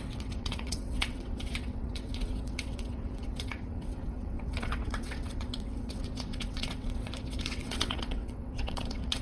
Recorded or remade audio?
remade